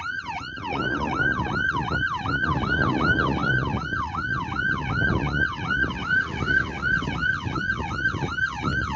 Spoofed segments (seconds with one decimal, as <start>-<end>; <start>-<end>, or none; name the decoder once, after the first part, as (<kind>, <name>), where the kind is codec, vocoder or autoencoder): 0.0-9.0 (vocoder, Vocos)